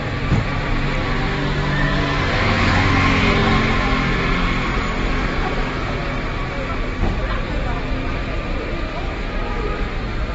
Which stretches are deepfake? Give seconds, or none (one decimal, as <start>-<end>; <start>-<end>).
2.3-2.9